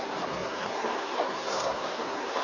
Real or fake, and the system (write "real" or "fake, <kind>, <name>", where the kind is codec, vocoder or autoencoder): fake, codec, SNAC